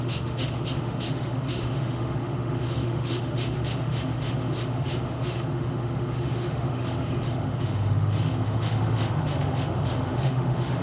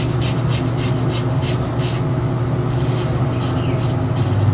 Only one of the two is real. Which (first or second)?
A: second